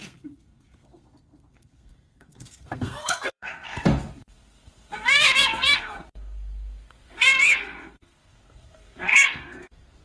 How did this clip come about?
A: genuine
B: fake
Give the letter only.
B